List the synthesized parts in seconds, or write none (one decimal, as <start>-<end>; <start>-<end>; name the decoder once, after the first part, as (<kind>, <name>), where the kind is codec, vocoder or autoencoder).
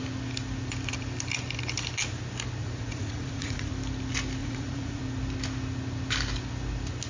2.6-3.7 (vocoder, Vocos); 4.4-5.0